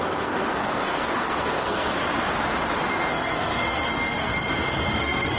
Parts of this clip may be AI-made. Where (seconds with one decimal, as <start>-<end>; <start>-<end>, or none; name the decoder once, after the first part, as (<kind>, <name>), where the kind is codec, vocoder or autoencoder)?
0.0-2.0 (codec, SNAC); 3.1-4.3; 5.0-5.4

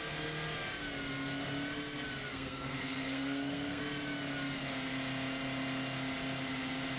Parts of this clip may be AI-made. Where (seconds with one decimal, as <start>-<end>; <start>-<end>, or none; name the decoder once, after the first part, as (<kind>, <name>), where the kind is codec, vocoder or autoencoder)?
2.3-3.8 (codec, SNAC)

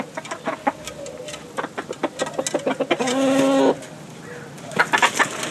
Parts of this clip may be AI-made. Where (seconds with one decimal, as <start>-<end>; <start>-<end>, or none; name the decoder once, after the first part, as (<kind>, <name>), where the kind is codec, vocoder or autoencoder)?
none

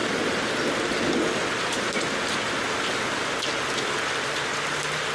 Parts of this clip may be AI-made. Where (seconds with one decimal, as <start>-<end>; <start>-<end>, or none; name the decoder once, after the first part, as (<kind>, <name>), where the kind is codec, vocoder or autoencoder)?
none